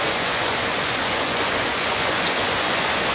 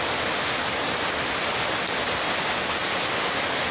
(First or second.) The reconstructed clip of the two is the first